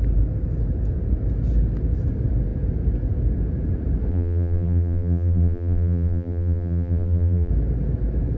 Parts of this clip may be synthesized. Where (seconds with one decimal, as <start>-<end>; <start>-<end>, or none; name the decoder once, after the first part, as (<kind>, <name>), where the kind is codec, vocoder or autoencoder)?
4.1-7.5 (vocoder, BigVGAN v2)